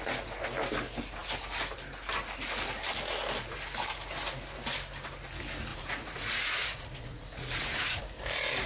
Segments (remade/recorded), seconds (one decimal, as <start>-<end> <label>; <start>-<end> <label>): 0.0-5.7 recorded; 5.7-8.0 remade; 8.0-8.7 recorded